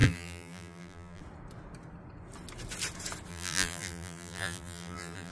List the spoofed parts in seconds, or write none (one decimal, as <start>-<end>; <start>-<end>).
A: 0.0-1.2; 3.3-5.3